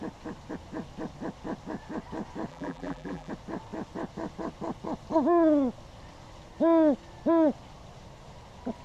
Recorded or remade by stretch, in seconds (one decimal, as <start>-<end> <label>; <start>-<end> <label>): 0.0-2.5 recorded; 2.5-3.3 remade; 3.3-8.8 recorded